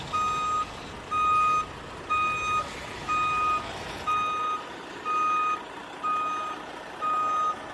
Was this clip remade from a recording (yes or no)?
no